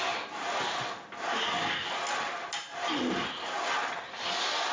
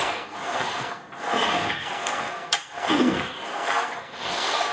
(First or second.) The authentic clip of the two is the first